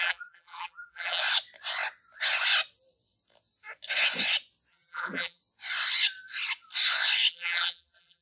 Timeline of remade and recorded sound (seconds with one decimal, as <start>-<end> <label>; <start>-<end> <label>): 0.0-1.2 remade; 1.2-4.7 recorded; 4.7-5.4 remade; 5.4-7.3 recorded; 7.3-8.2 remade